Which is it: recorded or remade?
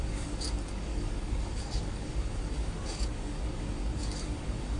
remade